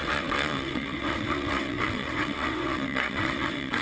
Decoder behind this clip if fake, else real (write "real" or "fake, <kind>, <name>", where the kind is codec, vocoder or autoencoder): fake, vocoder, WaveNeXt